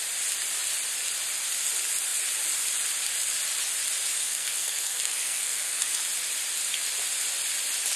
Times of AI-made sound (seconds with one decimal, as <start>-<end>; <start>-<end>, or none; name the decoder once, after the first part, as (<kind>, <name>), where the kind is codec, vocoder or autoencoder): 4.2-6.0 (codec, SNAC)